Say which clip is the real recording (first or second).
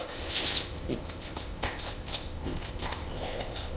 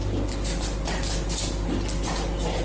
second